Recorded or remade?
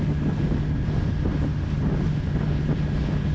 recorded